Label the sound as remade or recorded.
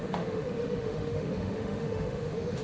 remade